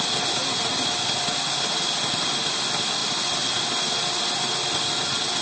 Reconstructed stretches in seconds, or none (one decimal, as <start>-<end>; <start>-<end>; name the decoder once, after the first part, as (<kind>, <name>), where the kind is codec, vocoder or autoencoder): none